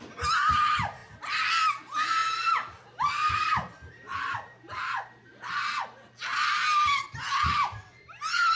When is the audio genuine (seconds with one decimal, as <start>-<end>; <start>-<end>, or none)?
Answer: 0.0-8.6